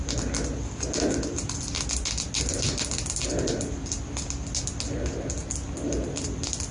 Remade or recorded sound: recorded